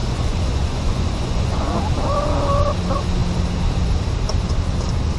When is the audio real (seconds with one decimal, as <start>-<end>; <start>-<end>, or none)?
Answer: 1.8-5.2